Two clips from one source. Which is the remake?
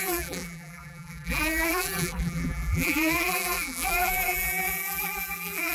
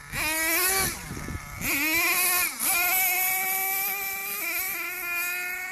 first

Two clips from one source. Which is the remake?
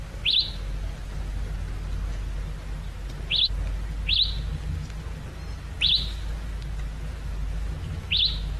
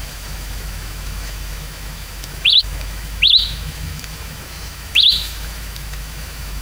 second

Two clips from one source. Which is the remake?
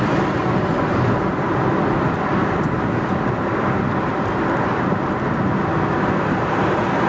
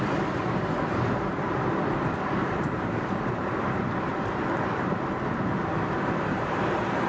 second